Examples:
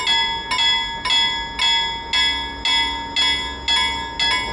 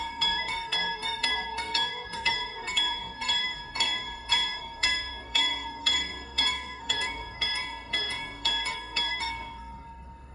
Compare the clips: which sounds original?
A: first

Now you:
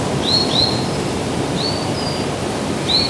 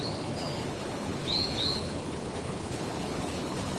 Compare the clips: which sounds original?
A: first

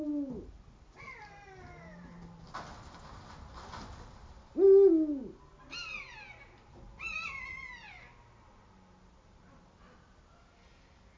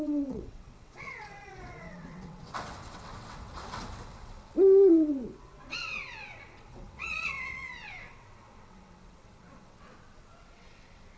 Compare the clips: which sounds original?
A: first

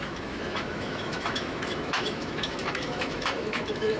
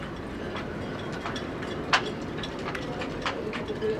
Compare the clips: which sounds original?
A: second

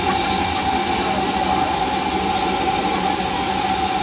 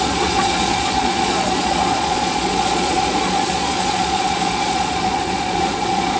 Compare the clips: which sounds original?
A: first